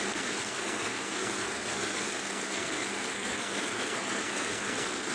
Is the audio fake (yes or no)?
yes